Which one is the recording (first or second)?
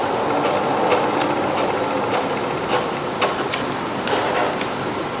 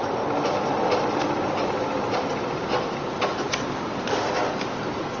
first